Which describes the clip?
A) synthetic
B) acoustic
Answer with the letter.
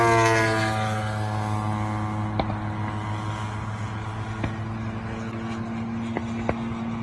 B